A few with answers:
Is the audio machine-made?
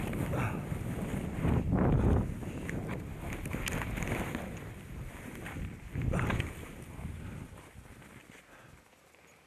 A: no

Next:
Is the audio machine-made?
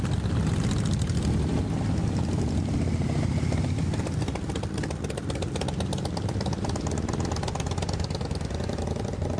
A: no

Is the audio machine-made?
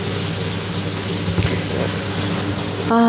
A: no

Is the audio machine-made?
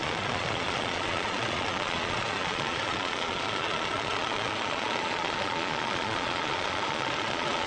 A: yes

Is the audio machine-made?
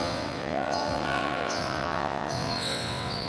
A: yes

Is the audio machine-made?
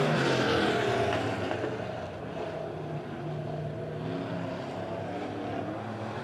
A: no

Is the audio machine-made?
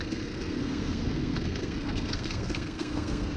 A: yes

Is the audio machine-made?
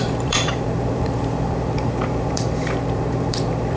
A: yes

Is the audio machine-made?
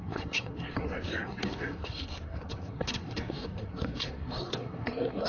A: yes